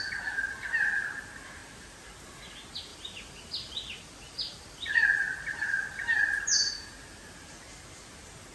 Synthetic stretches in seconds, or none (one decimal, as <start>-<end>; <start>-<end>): 2.9-6.4